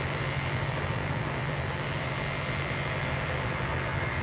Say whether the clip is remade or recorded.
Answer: remade